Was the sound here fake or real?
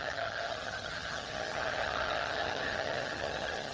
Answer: fake